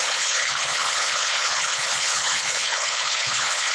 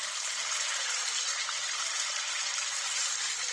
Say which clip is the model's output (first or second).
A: first